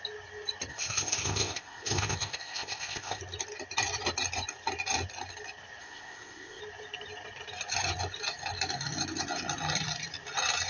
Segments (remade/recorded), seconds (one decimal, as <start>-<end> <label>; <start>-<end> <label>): 0.0-0.7 recorded; 0.7-3.2 remade; 3.2-5.8 recorded; 5.8-6.6 remade; 6.6-10.7 recorded